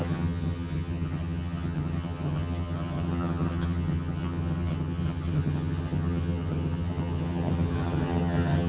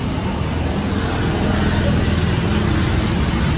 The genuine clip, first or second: second